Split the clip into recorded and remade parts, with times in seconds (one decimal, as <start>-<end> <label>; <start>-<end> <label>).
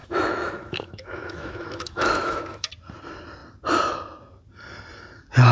0.0-2.7 remade; 2.7-5.5 recorded